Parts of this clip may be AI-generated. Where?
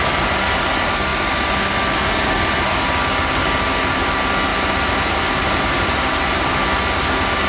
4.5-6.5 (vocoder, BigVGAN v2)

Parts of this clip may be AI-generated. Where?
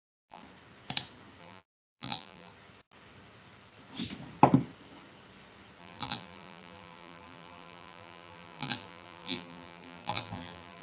0.0-0.4 (vocoder, BigVGAN v2); 1.4-2.5; 5.8-10.8